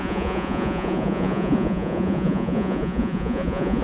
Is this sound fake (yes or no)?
yes